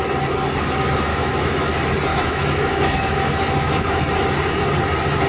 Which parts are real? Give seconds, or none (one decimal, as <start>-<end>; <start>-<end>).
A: 0.0-1.1; 1.7-2.1; 4.0-5.3